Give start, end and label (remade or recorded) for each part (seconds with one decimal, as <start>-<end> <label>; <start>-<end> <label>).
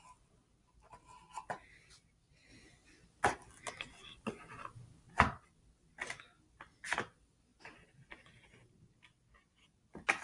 0.0-10.2 recorded